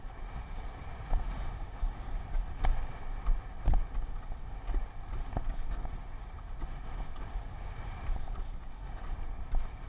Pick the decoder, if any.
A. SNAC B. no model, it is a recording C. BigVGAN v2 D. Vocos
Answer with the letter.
B